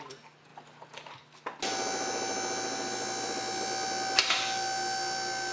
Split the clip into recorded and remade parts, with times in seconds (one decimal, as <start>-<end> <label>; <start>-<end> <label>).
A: 0.0-5.5 recorded